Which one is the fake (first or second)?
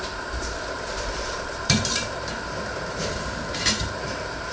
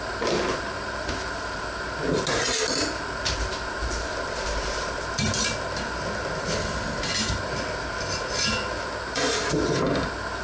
first